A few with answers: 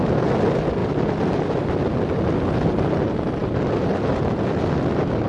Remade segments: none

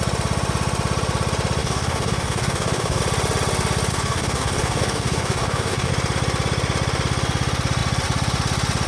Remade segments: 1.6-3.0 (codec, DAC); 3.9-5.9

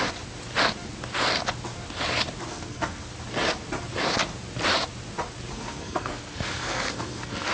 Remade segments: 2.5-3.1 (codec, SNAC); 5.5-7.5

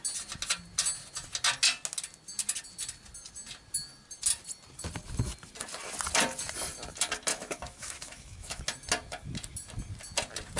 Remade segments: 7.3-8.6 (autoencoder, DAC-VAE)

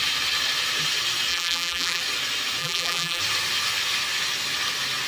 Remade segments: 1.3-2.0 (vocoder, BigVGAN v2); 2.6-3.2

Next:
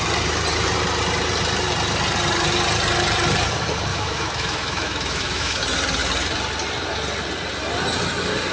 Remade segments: 3.9-5.6 (autoencoder, DAC-VAE)